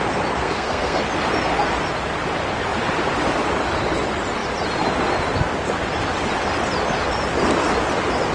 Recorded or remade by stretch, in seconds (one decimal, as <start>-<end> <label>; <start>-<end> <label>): 0.0-0.4 recorded; 0.4-1.0 remade; 1.0-8.3 recorded